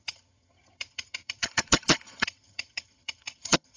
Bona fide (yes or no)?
no